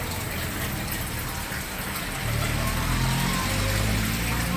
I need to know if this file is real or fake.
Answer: real